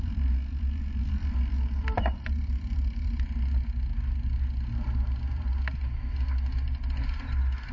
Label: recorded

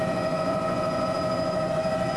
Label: remade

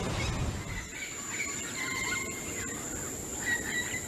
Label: recorded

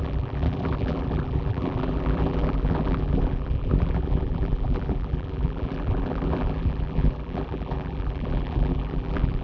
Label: remade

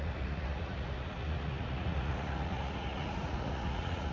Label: remade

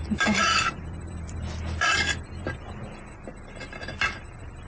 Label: remade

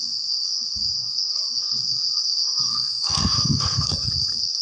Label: remade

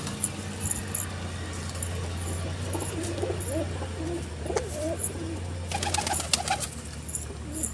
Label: recorded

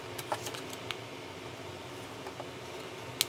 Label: recorded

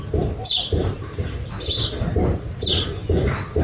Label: recorded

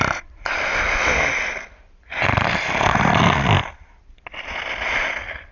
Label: recorded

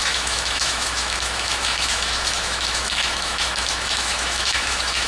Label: remade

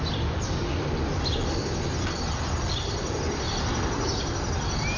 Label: recorded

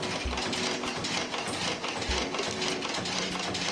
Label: recorded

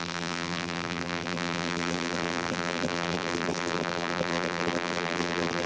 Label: remade